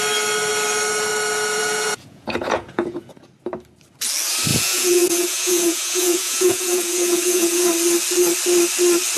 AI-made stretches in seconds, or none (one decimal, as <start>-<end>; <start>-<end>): 1.6-3.0; 4.5-7.7